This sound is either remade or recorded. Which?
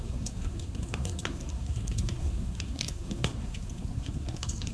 remade